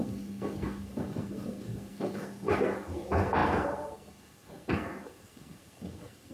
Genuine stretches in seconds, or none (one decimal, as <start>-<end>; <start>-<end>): none